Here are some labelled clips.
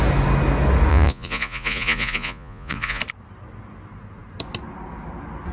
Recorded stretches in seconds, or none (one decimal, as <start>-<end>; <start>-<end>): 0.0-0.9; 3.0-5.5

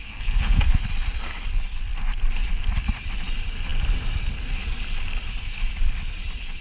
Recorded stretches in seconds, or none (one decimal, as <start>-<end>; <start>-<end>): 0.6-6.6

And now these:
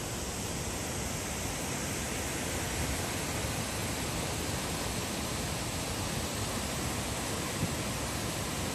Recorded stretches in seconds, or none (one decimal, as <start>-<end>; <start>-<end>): 0.0-3.8; 4.8-8.7

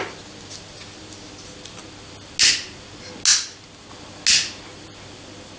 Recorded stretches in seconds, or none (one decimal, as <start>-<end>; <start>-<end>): 0.0-5.6

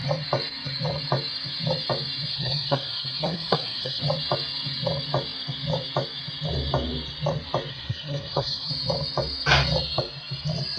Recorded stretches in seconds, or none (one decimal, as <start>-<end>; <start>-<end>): 0.0-2.3; 4.0-7.7; 8.7-10.8